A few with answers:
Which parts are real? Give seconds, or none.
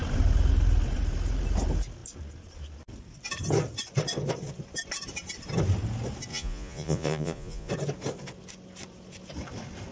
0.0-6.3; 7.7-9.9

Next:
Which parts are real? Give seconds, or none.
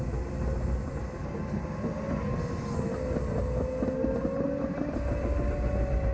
0.0-6.1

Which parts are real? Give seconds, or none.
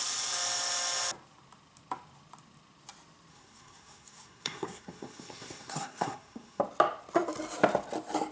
0.0-3.3; 6.6-8.3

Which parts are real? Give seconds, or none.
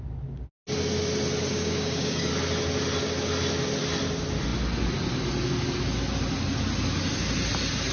0.0-1.5; 2.3-7.9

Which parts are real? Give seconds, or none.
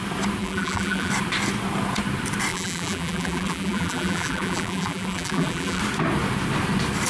0.0-0.4; 1.1-2.5; 5.8-7.1